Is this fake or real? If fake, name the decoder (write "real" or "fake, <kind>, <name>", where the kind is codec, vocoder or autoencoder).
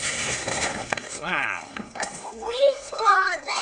fake, codec, SNAC